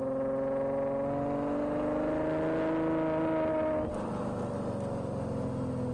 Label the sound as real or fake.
real